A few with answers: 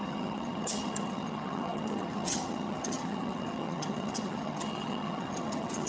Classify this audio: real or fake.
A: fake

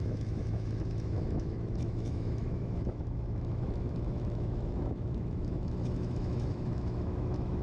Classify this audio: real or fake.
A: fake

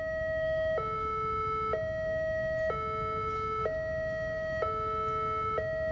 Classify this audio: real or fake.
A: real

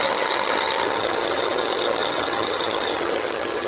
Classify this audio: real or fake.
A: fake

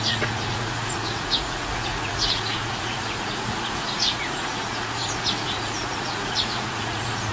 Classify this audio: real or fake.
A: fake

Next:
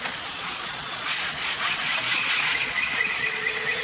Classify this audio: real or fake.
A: fake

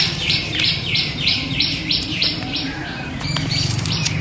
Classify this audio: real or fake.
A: fake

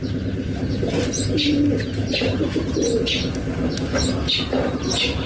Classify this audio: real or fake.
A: real